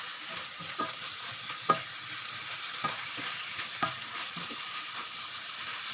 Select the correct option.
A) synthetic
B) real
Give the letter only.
B